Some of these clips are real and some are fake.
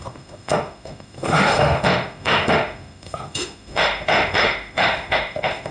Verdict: fake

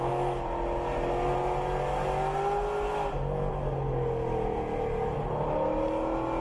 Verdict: real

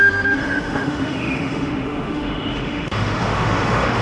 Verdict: fake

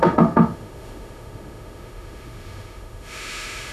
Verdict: fake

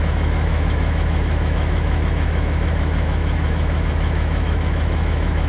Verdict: fake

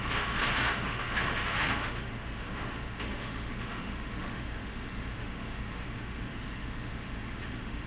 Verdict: fake